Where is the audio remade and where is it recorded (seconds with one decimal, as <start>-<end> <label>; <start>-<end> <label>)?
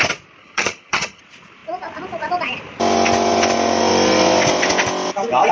0.0-0.4 recorded; 0.4-1.2 remade; 1.2-5.5 recorded